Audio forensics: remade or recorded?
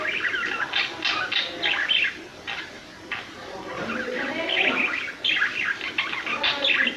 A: recorded